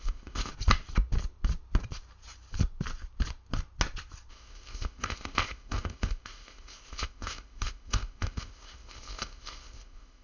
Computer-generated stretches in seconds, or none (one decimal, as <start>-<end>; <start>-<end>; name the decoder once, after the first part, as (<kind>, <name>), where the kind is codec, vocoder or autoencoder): 0.0-0.5 (codec, ZipCodec); 4.3-10.2